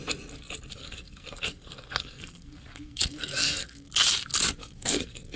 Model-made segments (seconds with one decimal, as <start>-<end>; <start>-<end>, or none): 0.7-3.9; 4.6-5.4